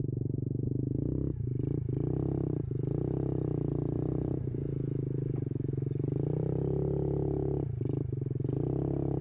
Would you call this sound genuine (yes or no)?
yes